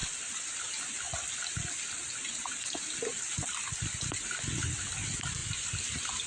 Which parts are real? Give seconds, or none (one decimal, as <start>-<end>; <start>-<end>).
0.0-5.4

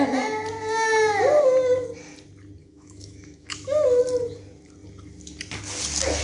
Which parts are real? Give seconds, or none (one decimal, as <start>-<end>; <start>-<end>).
0.0-2.6; 4.0-6.2

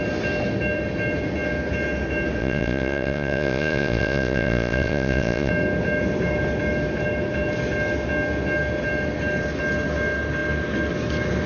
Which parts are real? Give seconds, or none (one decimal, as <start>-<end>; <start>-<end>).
0.0-2.4; 5.5-11.5

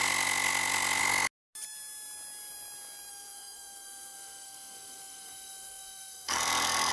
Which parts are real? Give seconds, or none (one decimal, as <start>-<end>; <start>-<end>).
0.0-3.1

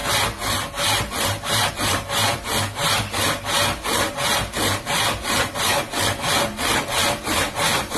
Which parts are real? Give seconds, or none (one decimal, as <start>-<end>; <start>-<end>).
0.0-8.0

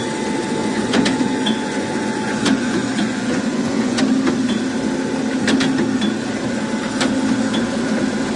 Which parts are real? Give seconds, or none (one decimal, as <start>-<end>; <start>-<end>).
0.0-0.6; 4.0-8.4

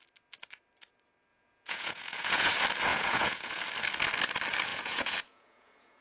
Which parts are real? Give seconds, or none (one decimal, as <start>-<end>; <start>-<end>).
0.0-1.3; 2.5-2.9; 3.6-4.7

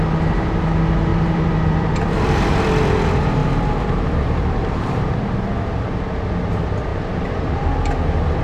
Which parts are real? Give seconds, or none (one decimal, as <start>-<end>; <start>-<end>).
0.0-1.1; 2.6-3.4; 6.0-6.9; 7.7-8.4